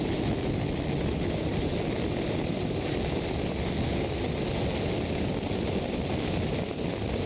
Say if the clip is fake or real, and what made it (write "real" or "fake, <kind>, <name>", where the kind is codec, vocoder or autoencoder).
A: real